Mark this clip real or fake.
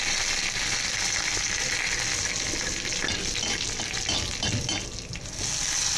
real